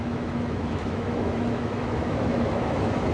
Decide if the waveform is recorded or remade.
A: remade